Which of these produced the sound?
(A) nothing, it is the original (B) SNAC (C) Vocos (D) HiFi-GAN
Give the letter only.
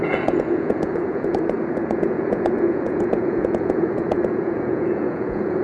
C